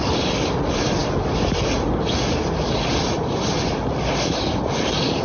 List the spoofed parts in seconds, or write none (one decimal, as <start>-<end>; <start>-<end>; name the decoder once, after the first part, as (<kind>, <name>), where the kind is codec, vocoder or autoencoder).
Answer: none